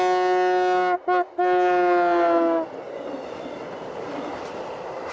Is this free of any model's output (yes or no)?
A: yes